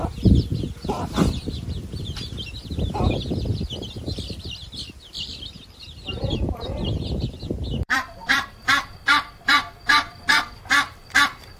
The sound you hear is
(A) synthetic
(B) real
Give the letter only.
A